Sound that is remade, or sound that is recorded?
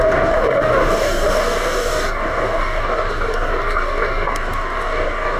remade